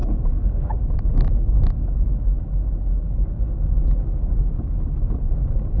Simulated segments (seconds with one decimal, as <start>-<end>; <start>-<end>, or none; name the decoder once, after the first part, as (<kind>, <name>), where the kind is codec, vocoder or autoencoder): none

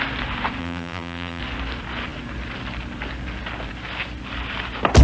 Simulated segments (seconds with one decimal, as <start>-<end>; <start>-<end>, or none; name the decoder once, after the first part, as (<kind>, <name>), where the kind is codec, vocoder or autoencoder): 0.6-1.4 (vocoder, BigVGAN v2)